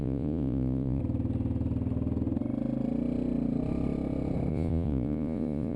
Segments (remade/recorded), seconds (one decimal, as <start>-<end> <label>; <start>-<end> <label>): 0.0-1.0 remade; 1.0-4.5 recorded; 4.5-5.8 remade